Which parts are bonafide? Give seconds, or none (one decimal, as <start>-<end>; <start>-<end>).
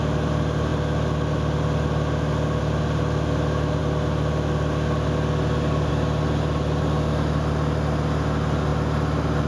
0.0-9.5